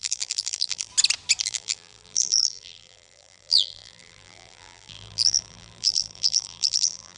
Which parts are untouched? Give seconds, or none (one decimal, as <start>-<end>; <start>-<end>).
0.9-1.4